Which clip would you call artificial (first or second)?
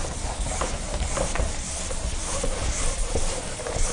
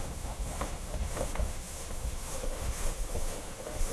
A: second